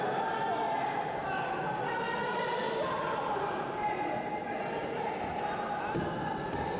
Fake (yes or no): no